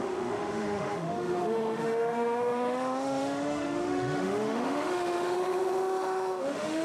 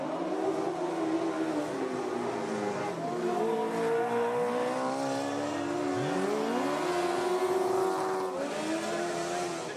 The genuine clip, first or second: second